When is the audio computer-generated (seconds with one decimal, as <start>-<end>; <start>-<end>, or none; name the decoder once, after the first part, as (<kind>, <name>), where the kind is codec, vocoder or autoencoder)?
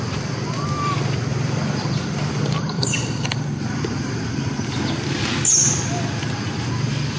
1.3-4.4 (vocoder, BigVGAN v2)